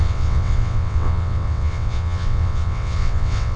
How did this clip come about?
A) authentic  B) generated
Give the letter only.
B